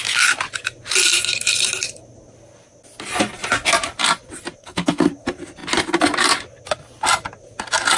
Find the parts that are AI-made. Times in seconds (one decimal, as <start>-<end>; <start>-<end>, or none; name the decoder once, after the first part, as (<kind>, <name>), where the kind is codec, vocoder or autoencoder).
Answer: 4.6-5.1 (codec, SNAC)